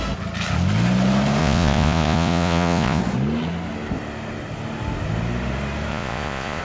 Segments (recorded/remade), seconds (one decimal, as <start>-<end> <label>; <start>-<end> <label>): 0.0-1.4 recorded; 1.4-3.0 remade; 3.0-5.9 recorded; 5.9-6.6 remade